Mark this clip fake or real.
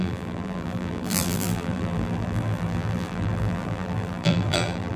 fake